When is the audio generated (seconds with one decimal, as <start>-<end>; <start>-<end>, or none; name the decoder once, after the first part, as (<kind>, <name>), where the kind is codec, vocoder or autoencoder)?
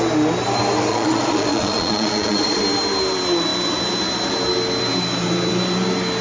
0.9-2.6 (vocoder, Vocos)